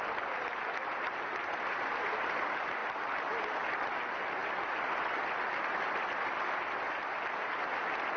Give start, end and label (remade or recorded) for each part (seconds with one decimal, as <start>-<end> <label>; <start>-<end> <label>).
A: 0.0-8.2 recorded